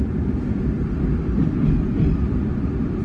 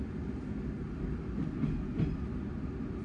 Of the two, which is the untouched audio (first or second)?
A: second